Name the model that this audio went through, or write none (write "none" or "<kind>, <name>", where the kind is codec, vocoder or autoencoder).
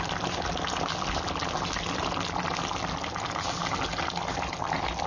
none